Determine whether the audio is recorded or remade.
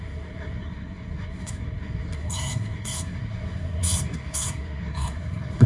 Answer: remade